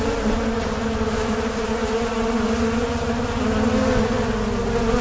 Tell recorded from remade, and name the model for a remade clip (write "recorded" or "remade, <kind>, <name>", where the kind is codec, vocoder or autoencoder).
recorded